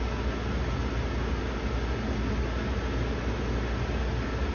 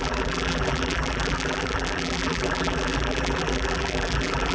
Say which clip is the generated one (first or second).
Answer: second